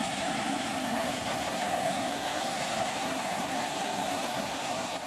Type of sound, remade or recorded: remade